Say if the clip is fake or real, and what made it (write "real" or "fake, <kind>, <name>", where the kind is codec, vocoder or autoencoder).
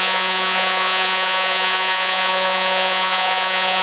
fake, vocoder, Vocos